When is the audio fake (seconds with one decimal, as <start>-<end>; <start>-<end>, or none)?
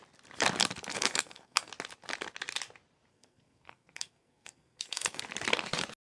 0.9-1.7; 3.1-5.2